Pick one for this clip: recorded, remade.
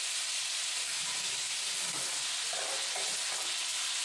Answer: recorded